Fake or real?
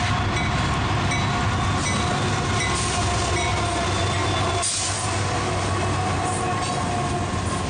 real